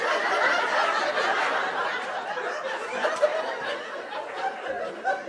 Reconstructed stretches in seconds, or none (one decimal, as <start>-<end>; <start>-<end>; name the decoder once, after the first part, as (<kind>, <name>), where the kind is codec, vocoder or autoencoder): none